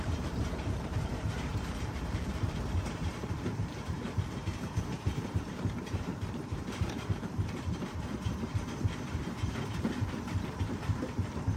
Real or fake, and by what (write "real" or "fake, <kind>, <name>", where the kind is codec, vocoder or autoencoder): fake, vocoder, BigVGAN v2